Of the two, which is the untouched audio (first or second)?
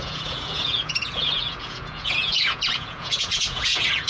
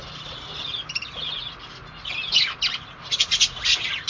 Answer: second